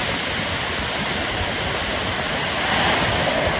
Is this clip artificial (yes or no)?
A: no